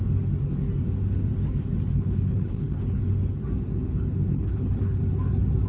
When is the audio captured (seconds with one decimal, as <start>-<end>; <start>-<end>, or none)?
0.0-1.9; 3.0-4.3; 5.0-5.7